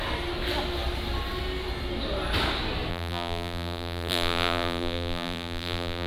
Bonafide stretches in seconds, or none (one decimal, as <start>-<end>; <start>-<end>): 0.0-2.9